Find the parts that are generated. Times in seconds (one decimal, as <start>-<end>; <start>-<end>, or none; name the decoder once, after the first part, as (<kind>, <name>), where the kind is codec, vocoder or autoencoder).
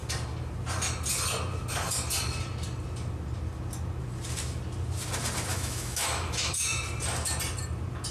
5.5-6.8 (autoencoder, DAC-VAE)